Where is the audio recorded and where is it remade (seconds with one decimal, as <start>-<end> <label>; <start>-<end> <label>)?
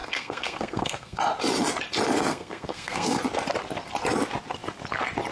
0.0-1.2 remade; 1.2-2.3 recorded; 2.3-3.2 remade; 3.2-5.3 recorded